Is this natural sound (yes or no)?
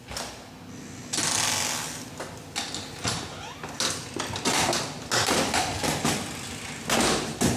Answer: yes